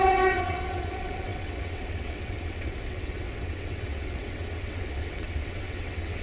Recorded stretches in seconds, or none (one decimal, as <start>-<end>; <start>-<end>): none